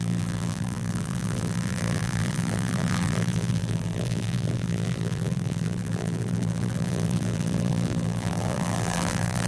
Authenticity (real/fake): fake